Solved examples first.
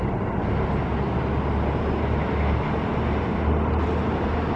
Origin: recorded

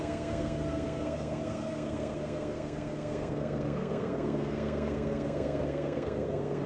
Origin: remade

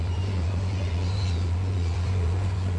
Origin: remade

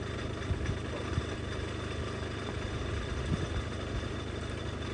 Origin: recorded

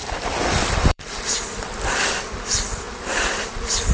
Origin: remade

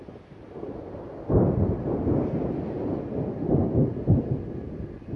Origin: recorded